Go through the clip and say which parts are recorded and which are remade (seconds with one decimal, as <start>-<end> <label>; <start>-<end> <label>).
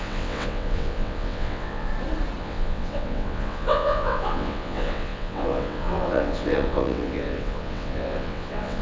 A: 0.0-1.9 remade; 1.9-2.4 recorded; 2.4-8.8 remade